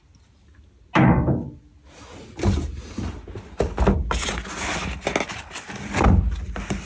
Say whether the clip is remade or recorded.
recorded